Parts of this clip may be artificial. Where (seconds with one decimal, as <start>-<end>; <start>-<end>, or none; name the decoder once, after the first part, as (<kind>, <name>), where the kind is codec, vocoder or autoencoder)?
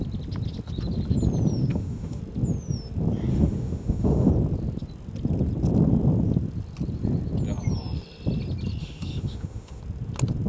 1.7-2.2 (autoencoder, DAC-VAE); 3.3-4.3; 8.8-9.8